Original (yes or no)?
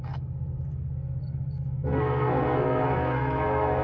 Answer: no